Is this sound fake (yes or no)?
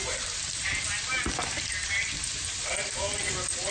no